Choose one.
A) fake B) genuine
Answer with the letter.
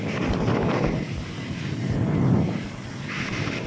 B